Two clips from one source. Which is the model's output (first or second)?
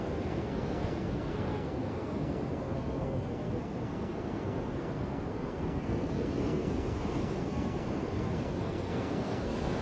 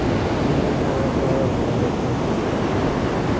first